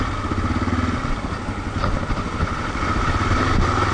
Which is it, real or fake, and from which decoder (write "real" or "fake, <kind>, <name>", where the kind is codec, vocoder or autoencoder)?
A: real